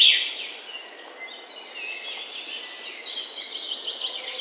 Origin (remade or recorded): recorded